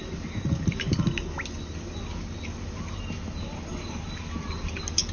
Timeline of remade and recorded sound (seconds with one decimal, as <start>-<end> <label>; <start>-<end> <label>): 0.0-5.1 recorded